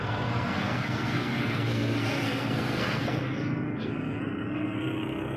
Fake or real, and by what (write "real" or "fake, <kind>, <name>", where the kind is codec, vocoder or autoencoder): fake, codec, SNAC